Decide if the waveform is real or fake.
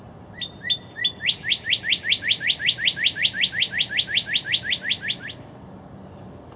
real